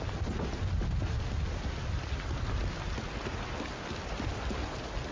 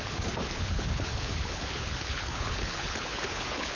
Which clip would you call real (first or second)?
first